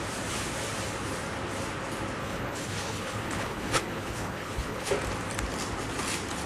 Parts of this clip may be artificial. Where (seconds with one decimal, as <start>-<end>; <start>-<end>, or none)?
2.2-4.9